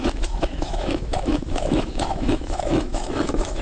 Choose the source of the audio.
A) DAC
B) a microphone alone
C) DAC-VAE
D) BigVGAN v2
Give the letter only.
C